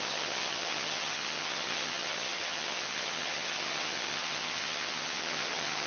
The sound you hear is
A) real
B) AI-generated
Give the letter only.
B